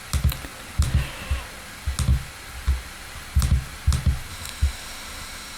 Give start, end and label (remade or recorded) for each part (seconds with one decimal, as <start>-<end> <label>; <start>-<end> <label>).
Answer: 0.0-4.3 recorded; 4.3-5.6 remade